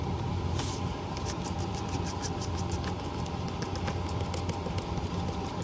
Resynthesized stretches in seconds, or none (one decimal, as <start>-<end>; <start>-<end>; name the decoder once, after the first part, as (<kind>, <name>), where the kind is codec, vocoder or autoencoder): 0.0-2.2 (vocoder, BigVGAN v2); 4.7-5.6